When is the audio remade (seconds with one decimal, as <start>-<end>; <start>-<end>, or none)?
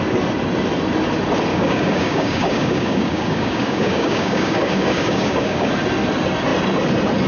1.5-5.7